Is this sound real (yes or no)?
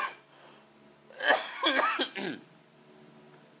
yes